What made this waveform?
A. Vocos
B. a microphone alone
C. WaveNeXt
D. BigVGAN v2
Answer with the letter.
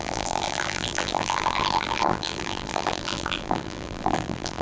D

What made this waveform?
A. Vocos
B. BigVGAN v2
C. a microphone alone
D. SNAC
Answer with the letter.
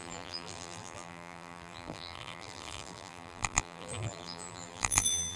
B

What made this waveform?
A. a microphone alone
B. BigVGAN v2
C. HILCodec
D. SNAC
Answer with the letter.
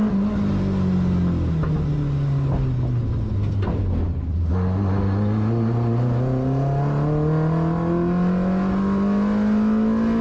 A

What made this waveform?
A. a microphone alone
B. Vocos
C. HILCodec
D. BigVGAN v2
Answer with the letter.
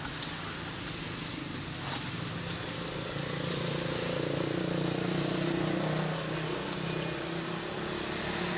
A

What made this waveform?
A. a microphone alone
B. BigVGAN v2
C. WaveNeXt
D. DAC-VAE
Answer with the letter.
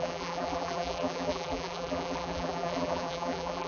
B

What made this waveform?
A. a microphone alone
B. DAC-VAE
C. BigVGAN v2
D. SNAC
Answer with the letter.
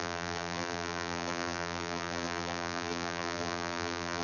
C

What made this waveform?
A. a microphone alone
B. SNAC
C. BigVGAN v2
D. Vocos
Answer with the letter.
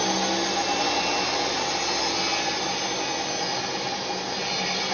A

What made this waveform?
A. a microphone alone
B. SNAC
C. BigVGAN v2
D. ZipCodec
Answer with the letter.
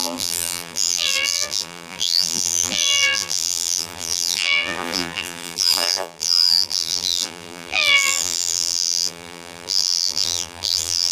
C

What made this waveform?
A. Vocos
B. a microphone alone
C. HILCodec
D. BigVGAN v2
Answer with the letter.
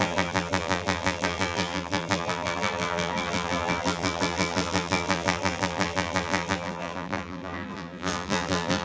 D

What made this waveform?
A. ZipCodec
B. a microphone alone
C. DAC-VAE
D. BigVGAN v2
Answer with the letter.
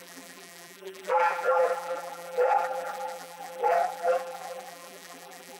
D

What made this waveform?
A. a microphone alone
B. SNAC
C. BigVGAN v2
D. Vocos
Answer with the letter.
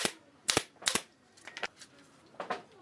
A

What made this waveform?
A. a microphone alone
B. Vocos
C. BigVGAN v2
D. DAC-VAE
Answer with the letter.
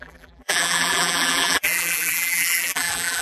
C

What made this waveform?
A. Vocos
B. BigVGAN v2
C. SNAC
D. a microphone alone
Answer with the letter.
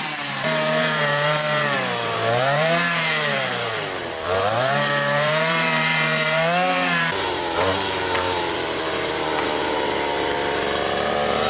B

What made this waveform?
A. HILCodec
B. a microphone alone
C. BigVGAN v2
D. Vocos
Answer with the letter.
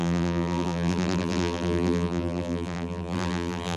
C